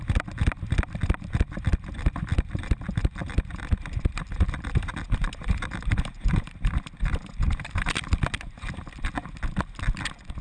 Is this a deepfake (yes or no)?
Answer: no